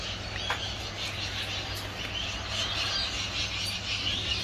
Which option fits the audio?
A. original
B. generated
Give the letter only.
A